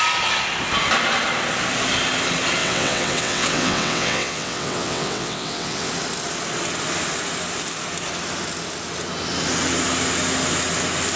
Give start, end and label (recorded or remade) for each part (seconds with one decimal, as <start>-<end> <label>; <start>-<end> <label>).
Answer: 0.0-2.6 recorded; 2.6-5.9 remade; 5.9-11.2 recorded